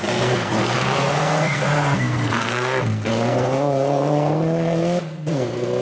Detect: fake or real fake